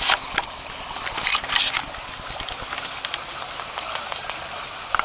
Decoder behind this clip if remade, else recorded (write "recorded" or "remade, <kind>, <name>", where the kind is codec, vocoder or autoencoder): recorded